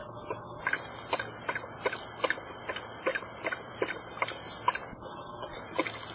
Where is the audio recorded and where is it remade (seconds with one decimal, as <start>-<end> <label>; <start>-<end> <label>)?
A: 0.0-0.6 remade; 0.6-3.1 recorded; 3.1-4.5 remade; 4.5-6.1 recorded